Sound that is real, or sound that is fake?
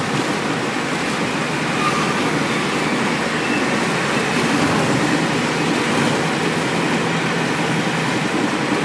real